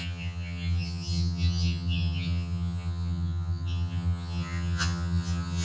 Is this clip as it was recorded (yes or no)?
no